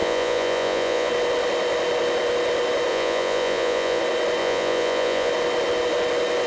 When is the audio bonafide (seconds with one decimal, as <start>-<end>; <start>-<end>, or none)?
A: 1.1-2.9; 4.0-4.4; 5.3-6.5